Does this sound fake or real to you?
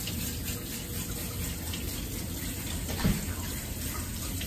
real